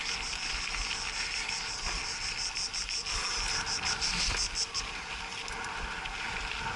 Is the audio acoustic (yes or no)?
yes